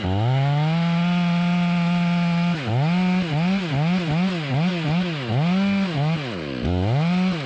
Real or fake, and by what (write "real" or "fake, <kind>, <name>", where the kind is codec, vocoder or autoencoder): real